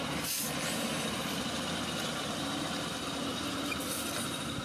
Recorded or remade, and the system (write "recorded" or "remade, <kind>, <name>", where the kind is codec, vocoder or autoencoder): recorded